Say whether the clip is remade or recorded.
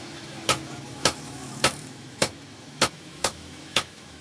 remade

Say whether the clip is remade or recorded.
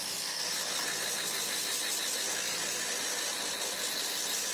recorded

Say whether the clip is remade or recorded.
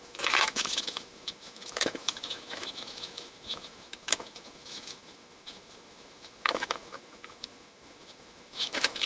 remade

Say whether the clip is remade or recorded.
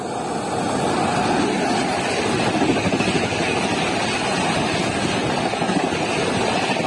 recorded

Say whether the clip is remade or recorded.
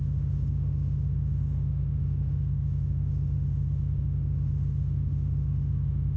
remade